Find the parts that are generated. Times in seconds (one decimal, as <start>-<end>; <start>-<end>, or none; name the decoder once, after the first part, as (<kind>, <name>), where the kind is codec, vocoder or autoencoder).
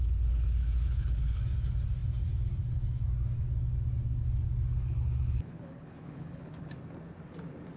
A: 0.0-1.4 (codec, HILCodec); 4.7-6.7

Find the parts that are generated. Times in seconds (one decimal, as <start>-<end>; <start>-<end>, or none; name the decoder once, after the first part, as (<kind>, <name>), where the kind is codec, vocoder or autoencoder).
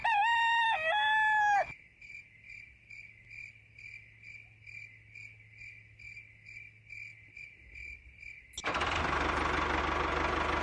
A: none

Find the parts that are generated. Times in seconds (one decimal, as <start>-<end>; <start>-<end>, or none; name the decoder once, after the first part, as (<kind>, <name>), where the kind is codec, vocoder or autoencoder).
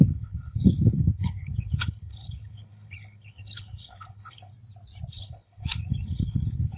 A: 0.0-4.5 (codec, HILCodec); 5.1-6.8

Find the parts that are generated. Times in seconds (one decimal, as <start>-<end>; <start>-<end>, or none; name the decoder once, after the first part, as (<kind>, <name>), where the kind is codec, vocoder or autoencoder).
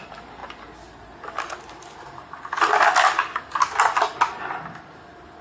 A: none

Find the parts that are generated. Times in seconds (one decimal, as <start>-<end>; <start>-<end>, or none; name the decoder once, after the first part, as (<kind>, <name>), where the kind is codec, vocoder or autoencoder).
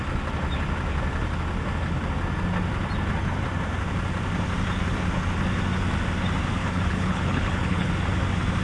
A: 6.6-7.9 (codec, HILCodec)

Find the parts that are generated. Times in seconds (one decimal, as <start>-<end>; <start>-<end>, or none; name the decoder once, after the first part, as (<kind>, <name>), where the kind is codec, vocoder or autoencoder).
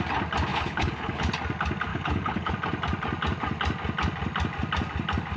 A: 0.5-1.2 (codec, HILCodec); 1.9-2.5